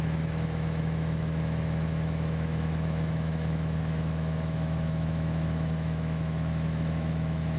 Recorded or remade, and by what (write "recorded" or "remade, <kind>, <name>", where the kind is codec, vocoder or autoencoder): remade, autoencoder, DAC-VAE